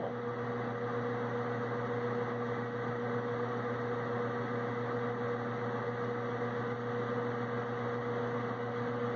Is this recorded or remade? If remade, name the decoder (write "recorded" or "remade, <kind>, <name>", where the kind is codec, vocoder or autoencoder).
recorded